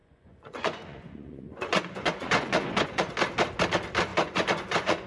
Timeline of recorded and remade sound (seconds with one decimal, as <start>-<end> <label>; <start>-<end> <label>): 0.0-3.1 remade; 3.1-4.1 recorded; 4.1-5.1 remade